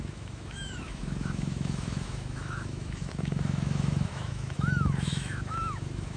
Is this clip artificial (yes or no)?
yes